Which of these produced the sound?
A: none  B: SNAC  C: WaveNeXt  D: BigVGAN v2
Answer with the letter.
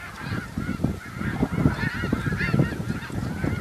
A